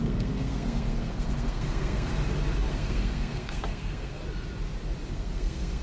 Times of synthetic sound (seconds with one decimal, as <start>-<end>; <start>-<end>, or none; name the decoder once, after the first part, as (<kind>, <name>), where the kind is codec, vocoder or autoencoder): 0.0-2.1 (codec, SNAC); 2.7-4.2; 5.1-5.8